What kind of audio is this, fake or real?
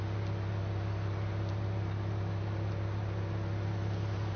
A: real